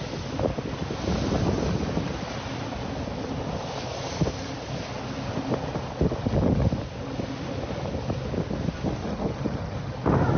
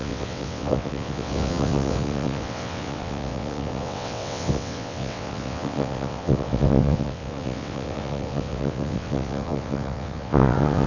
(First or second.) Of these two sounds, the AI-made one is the second